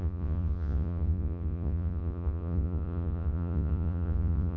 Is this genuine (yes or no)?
no